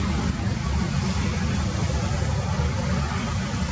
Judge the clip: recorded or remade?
recorded